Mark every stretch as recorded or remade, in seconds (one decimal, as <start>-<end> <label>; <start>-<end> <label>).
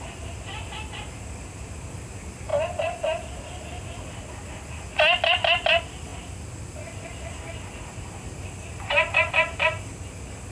0.0-10.5 recorded